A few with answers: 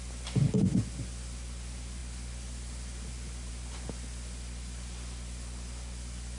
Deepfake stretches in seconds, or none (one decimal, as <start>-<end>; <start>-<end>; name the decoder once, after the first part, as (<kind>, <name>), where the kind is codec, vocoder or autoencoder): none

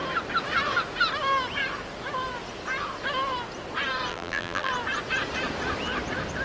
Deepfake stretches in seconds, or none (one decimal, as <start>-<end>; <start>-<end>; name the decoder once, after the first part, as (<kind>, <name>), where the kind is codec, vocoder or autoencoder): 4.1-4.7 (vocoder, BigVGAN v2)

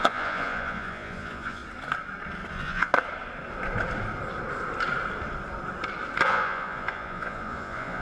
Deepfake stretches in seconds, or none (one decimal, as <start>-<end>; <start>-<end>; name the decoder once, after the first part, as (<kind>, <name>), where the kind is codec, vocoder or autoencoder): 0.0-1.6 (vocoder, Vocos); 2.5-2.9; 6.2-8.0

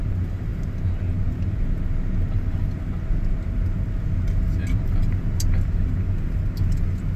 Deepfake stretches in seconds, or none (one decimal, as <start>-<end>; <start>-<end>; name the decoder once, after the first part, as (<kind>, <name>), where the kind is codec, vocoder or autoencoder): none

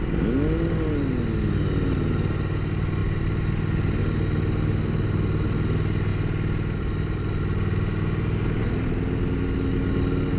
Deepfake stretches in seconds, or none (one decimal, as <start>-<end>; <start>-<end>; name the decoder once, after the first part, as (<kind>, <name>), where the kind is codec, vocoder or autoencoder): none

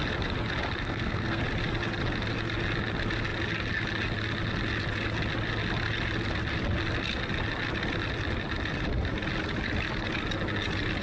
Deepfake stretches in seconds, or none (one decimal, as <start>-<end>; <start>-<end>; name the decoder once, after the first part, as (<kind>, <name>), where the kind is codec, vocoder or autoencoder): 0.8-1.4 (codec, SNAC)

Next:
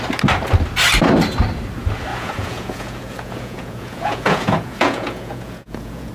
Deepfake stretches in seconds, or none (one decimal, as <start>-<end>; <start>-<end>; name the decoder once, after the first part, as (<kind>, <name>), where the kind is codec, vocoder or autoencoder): 2.1-6.1 (vocoder, Vocos)